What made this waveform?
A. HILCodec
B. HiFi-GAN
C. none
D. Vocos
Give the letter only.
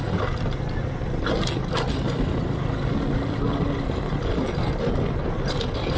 C